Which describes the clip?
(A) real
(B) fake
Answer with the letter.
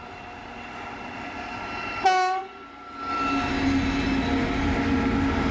A